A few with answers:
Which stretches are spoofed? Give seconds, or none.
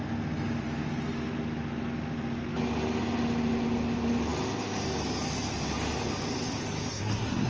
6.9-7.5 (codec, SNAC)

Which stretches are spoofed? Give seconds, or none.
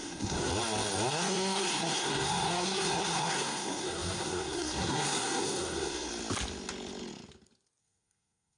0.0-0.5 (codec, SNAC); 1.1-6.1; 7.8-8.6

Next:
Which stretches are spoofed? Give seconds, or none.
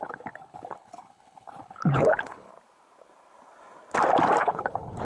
0.0-2.5 (codec, HILCodec); 4.4-5.0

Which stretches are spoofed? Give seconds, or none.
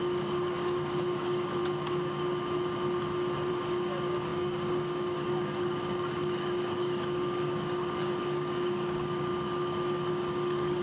0.0-1.6 (codec, DAC); 3.5-9.3; 10.1-10.8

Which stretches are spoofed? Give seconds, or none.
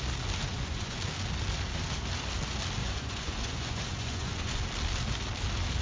0.5-1.0 (vocoder, Vocos); 2.8-4.6